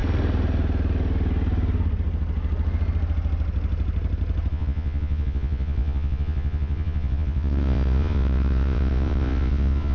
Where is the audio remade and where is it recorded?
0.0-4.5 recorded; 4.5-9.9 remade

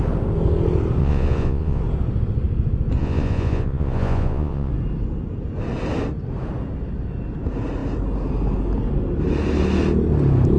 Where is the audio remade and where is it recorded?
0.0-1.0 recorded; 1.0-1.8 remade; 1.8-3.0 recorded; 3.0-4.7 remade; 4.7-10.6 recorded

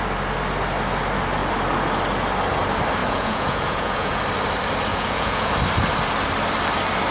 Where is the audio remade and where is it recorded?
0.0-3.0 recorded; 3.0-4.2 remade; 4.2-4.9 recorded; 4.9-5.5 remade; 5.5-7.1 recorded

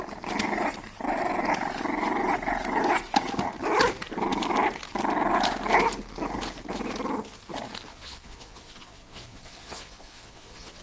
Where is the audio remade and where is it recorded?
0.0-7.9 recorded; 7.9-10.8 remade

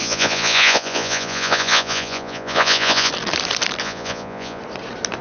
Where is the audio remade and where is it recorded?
0.0-3.1 remade; 3.1-3.8 recorded; 3.8-4.6 remade; 4.6-5.2 recorded

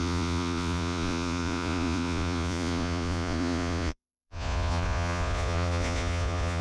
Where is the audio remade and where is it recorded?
0.0-6.6 remade

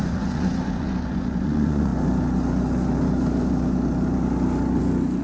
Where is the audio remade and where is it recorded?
0.0-1.9 remade; 1.9-5.2 recorded

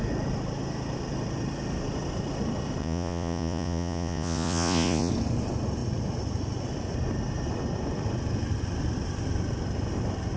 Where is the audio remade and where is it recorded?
0.0-2.8 recorded; 2.8-5.1 remade; 5.1-10.4 recorded